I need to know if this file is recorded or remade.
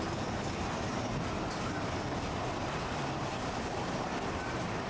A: recorded